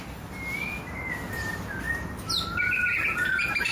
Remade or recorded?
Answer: recorded